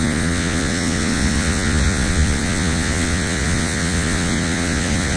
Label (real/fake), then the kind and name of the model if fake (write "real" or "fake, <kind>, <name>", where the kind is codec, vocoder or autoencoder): fake, vocoder, Vocos